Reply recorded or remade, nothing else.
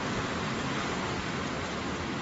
recorded